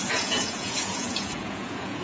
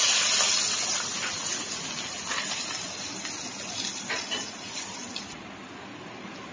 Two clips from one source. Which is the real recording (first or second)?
second